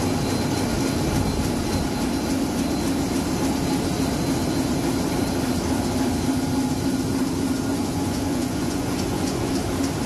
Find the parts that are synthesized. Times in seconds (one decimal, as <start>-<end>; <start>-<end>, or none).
7.7-9.5